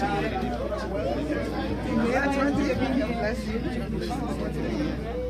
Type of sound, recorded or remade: recorded